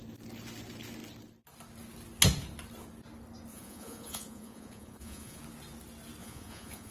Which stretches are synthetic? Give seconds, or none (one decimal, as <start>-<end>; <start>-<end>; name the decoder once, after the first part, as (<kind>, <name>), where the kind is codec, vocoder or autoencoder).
3.5-5.4 (vocoder, Vocos); 6.2-6.9